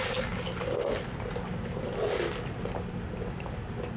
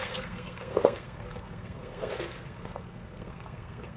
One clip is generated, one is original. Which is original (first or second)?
first